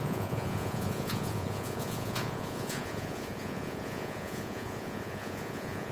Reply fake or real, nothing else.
fake